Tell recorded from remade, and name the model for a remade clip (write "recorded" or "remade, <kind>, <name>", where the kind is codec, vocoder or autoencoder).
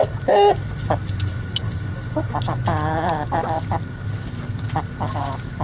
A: recorded